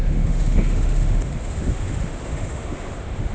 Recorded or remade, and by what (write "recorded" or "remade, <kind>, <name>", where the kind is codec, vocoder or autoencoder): remade, autoencoder, DAC-VAE